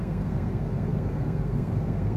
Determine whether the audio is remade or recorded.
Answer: remade